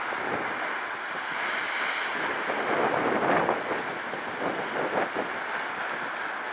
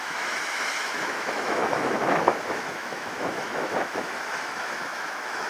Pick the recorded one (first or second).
first